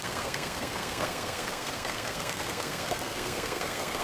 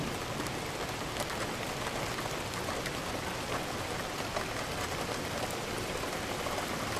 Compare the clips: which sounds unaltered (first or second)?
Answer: second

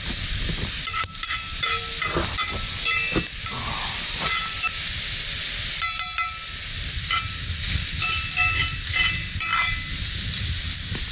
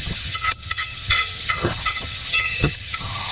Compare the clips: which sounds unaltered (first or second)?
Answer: first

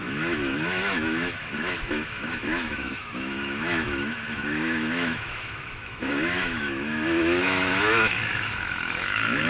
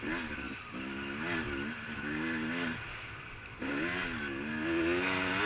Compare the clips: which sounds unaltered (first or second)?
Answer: second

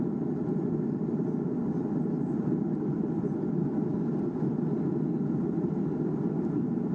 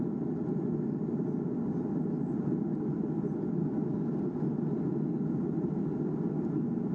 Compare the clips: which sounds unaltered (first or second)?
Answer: second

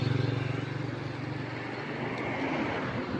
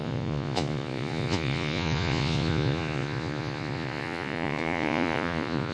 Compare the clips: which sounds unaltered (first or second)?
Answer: first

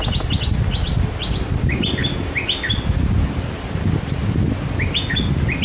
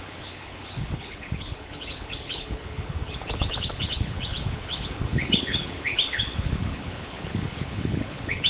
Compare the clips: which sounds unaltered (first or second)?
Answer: first